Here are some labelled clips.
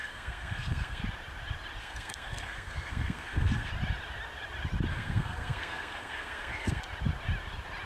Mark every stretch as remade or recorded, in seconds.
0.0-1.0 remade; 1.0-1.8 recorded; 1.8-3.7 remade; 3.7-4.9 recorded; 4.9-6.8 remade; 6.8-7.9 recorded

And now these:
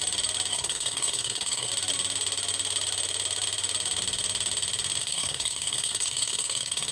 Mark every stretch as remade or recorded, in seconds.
0.0-0.5 recorded; 0.5-1.7 remade; 1.7-5.0 recorded; 5.0-6.9 remade

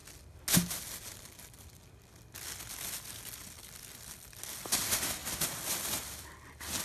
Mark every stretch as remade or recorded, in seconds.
0.0-6.8 recorded

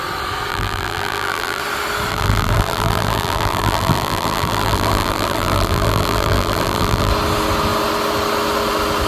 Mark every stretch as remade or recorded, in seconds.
0.0-0.5 recorded; 0.5-1.6 remade; 1.6-2.1 recorded; 2.1-7.1 remade; 7.1-9.1 recorded

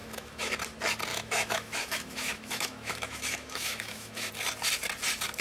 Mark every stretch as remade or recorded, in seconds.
0.0-0.6 remade; 0.6-1.1 recorded; 1.1-4.3 remade; 4.3-5.4 recorded

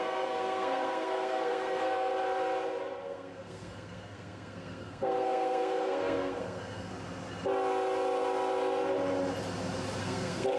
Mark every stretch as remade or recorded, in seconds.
0.0-2.1 remade; 2.1-3.0 recorded; 3.0-6.9 remade; 6.9-10.0 recorded; 10.0-10.6 remade